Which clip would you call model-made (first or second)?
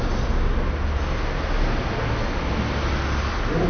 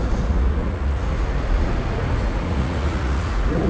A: second